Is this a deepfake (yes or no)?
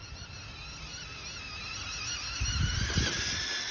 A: no